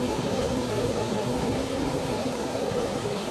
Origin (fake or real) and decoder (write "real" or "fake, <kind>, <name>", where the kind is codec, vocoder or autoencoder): fake, codec, SNAC